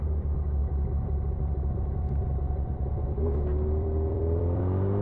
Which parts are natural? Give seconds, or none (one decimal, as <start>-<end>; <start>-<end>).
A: 0.0-0.6; 2.2-3.5; 4.6-5.0